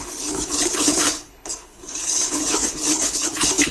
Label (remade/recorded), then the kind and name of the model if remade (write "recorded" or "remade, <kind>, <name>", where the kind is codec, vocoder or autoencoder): remade, codec, HILCodec